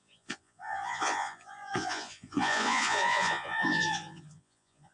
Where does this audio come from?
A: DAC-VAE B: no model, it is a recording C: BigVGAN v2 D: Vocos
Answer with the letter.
D